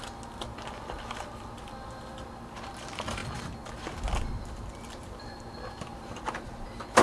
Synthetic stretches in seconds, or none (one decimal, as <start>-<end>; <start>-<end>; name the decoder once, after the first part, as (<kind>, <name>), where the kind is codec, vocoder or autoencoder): none